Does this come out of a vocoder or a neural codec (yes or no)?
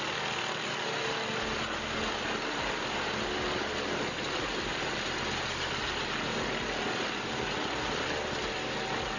no